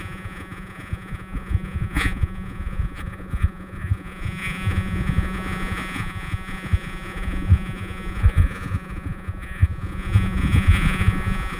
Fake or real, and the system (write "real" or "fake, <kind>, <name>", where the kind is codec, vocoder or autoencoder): fake, vocoder, Vocos